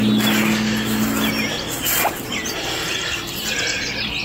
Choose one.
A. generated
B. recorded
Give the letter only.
B